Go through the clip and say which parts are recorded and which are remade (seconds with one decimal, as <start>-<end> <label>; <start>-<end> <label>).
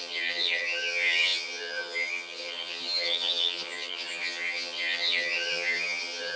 0.0-6.4 remade